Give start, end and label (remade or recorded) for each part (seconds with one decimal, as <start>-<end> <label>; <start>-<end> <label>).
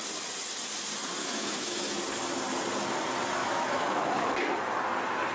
0.0-1.2 recorded; 1.2-2.0 remade; 2.0-3.4 recorded; 3.4-4.3 remade; 4.3-5.3 recorded